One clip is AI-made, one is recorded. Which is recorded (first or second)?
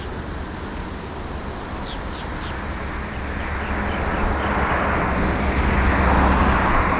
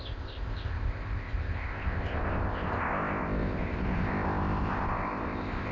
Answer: first